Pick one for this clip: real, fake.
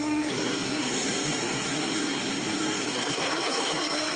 fake